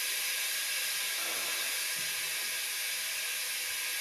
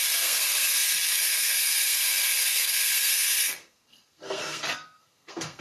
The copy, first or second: second